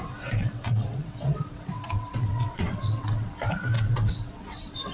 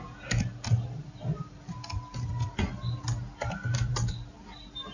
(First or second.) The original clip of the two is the second